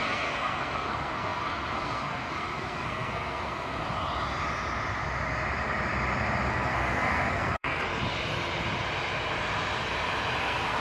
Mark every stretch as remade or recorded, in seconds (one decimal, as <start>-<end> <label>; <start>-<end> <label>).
0.0-3.8 remade; 3.8-6.5 recorded; 6.5-7.9 remade; 7.9-10.4 recorded; 10.4-10.8 remade